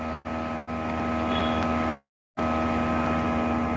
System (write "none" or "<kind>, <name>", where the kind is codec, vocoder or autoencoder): none